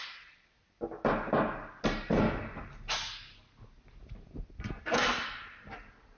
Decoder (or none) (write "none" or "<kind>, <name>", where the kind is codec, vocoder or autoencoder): none